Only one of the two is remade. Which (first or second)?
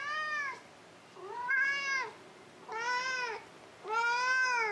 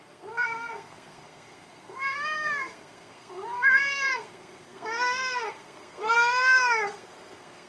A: second